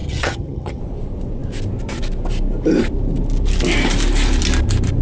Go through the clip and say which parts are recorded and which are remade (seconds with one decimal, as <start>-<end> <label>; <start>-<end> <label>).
0.0-0.8 remade; 0.8-5.0 recorded